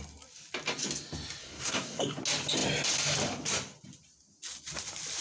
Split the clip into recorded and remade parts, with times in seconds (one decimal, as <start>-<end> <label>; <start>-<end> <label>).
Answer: 0.0-1.4 recorded; 1.4-2.2 remade; 2.2-5.2 recorded